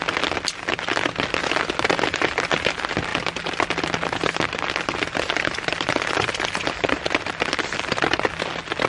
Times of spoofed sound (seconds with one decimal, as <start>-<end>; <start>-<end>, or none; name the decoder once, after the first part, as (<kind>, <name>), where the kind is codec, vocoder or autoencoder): none